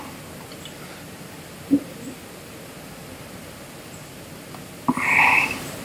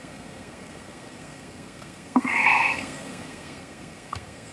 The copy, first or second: second